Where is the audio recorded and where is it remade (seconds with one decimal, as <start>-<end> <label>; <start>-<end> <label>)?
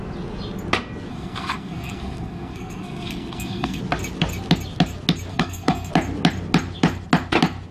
0.0-1.1 recorded; 1.1-3.8 remade; 3.8-5.3 recorded; 5.3-5.9 remade; 5.9-7.7 recorded